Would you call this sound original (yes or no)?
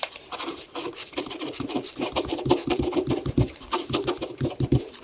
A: no